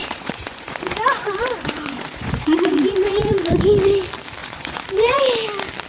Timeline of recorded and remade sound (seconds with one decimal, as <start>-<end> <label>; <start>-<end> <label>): 0.0-3.5 remade; 3.5-4.4 recorded; 4.4-5.2 remade; 5.2-5.9 recorded